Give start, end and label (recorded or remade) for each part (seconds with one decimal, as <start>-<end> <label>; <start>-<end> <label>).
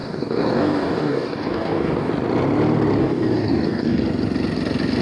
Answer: 0.0-2.1 remade; 2.1-3.0 recorded; 3.0-4.0 remade; 4.0-5.0 recorded